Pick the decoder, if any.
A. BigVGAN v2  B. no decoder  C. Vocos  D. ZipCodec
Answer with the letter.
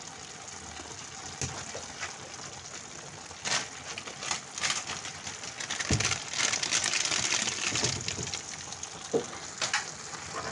B